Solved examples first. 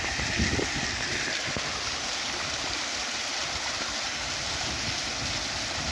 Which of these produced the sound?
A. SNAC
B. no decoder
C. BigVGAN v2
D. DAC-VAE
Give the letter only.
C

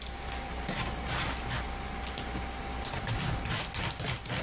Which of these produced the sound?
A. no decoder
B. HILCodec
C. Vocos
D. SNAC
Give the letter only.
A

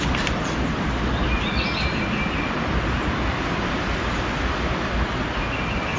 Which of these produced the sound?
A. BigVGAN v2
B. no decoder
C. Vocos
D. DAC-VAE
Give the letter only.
B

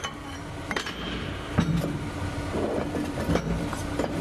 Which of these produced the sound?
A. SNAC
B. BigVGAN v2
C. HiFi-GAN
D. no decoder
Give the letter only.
D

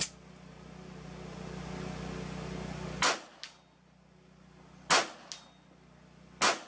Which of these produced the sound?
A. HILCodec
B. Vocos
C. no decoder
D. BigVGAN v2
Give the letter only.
C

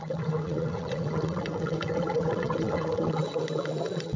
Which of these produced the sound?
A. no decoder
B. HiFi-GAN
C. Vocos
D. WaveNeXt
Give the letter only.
D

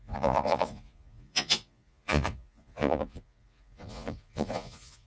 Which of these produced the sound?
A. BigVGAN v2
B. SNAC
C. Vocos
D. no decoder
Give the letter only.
C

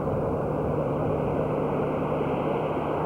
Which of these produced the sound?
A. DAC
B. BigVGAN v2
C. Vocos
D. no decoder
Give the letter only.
D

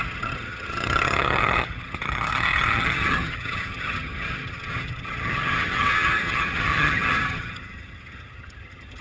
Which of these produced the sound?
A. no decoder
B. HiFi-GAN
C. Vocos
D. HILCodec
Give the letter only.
B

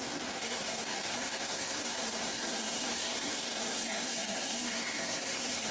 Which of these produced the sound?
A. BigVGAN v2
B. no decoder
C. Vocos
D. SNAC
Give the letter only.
D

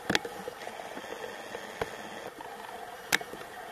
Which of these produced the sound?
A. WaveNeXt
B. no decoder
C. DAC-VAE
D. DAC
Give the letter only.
B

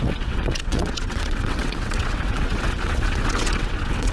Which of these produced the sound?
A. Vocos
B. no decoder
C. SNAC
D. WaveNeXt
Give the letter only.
D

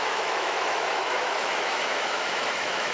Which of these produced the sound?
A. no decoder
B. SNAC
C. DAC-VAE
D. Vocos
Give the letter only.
C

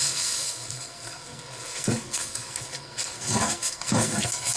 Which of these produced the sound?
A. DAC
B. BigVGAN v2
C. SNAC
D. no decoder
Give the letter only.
C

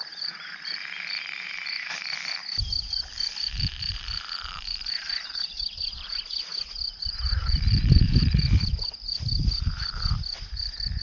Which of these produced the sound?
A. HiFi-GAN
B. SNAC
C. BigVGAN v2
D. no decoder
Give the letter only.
C